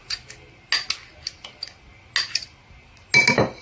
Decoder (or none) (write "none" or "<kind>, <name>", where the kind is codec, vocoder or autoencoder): none